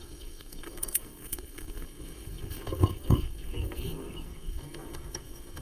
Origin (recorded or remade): remade